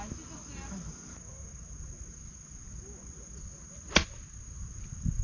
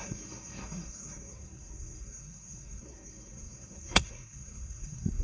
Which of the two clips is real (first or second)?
first